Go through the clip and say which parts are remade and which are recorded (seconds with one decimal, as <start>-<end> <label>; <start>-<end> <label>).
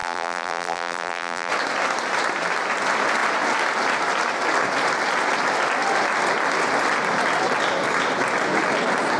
0.0-1.5 remade; 1.5-9.2 recorded